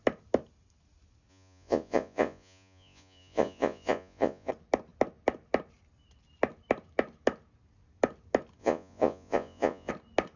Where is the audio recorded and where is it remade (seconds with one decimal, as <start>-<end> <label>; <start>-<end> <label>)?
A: 0.0-1.3 recorded; 1.3-4.5 remade; 4.5-8.6 recorded; 8.6-9.9 remade; 9.9-10.4 recorded